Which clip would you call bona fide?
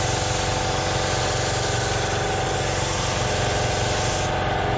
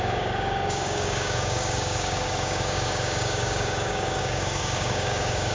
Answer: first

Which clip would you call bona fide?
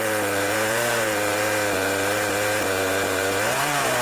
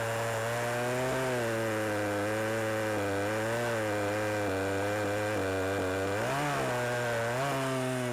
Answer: second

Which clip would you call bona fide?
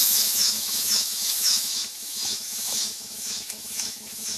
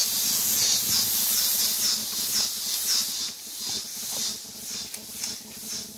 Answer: second